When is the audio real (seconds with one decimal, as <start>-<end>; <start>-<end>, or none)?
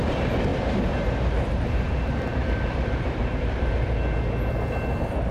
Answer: 0.0-0.5; 3.7-5.3